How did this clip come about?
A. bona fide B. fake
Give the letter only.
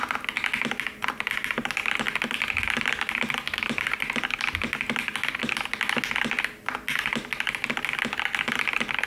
A